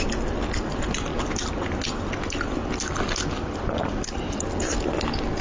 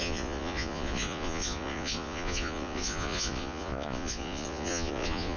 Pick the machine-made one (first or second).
second